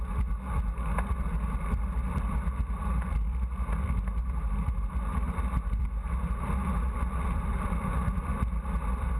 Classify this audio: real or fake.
real